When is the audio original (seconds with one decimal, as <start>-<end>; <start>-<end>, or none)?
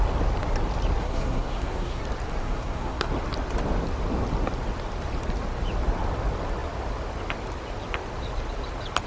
0.0-1.0; 2.0-2.4; 3.1-9.1